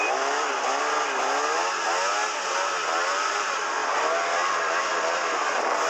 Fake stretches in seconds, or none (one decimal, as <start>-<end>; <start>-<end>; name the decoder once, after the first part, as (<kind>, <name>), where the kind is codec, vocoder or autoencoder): none